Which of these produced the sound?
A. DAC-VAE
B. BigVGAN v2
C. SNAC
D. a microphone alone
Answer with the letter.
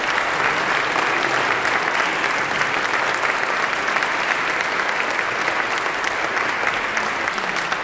D